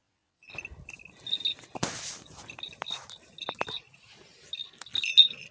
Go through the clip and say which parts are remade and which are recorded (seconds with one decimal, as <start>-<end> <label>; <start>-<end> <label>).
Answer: 0.0-5.5 recorded